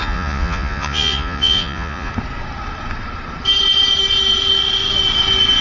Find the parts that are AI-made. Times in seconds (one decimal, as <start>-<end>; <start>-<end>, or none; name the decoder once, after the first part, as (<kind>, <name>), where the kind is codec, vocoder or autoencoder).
0.0-2.1 (vocoder, Vocos)